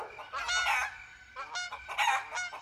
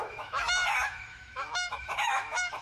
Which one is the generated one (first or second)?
second